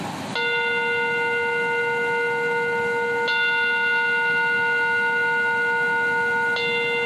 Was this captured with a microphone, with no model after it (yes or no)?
yes